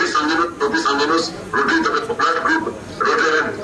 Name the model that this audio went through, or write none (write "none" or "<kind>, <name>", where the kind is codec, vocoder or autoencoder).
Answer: vocoder, BigVGAN v2